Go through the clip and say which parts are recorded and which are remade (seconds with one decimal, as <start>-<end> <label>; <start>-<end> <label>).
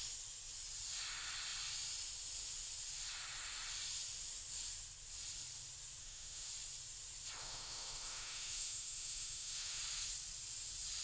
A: 0.0-6.0 recorded; 6.0-6.5 remade; 6.5-7.4 recorded; 7.4-9.8 remade; 9.8-11.0 recorded